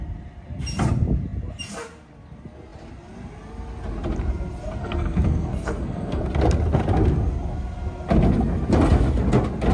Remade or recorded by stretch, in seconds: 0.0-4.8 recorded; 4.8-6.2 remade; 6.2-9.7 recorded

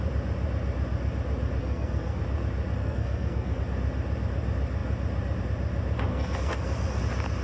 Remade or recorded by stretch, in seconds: 0.0-1.6 recorded; 1.6-2.2 remade; 2.2-2.8 recorded; 2.8-3.6 remade; 3.6-6.1 recorded; 6.1-7.0 remade; 7.0-7.4 recorded